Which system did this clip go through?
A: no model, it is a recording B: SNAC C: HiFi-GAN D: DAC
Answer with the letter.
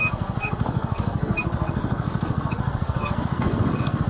B